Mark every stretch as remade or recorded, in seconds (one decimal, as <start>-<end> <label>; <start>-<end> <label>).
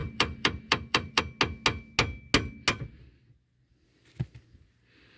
0.0-1.2 remade; 1.2-5.2 recorded